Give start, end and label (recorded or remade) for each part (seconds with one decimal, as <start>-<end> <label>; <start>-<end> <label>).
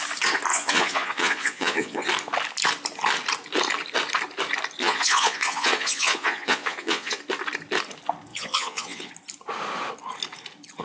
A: 0.0-0.5 recorded; 0.5-2.1 remade; 2.1-4.8 recorded; 4.8-7.2 remade; 7.2-8.3 recorded; 8.3-9.1 remade; 9.1-10.8 recorded